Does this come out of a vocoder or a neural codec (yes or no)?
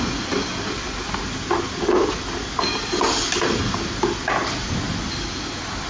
no